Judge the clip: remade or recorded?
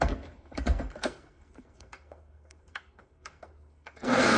remade